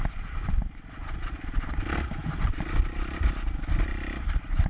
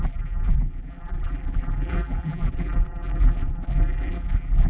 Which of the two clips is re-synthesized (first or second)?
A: second